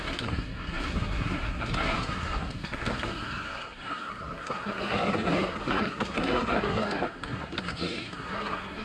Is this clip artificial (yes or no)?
yes